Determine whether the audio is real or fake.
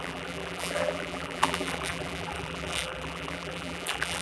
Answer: fake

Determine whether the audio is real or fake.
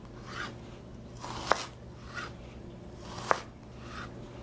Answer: real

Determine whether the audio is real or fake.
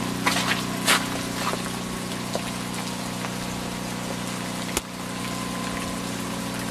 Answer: real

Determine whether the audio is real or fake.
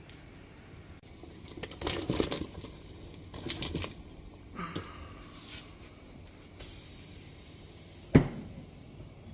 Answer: real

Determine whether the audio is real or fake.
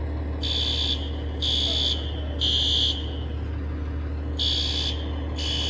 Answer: real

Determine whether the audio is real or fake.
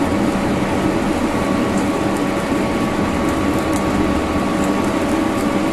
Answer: real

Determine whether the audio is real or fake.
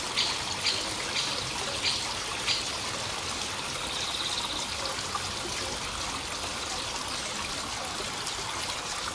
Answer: real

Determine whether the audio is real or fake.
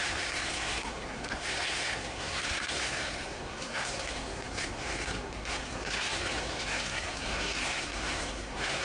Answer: fake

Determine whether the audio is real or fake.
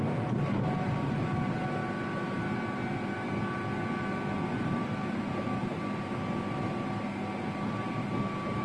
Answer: real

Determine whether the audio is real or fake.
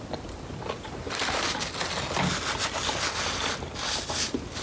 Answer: real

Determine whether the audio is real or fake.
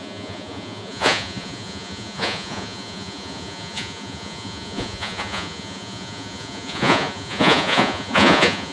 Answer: fake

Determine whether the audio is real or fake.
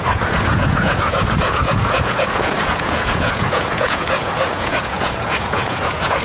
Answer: fake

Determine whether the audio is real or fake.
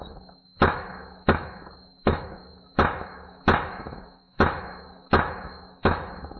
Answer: fake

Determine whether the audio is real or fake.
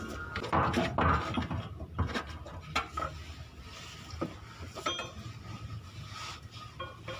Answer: real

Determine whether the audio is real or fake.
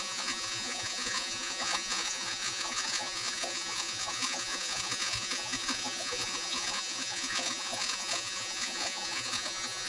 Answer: fake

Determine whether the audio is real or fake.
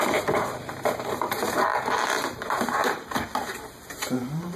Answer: fake